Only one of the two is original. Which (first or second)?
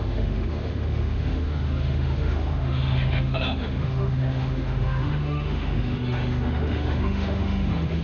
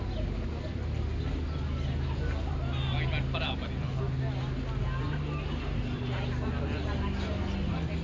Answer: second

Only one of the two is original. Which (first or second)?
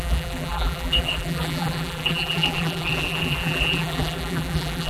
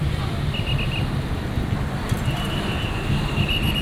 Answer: second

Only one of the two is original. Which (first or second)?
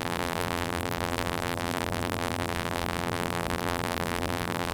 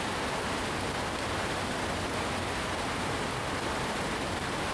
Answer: second